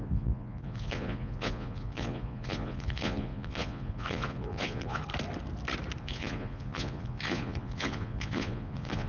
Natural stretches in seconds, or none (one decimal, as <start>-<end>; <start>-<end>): 5.0-6.0

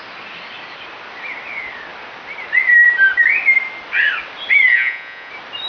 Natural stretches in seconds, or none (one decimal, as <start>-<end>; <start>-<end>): 0.0-4.7; 5.3-5.7